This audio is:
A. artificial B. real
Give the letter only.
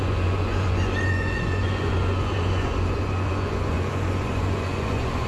A